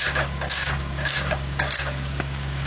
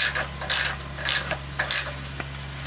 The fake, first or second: first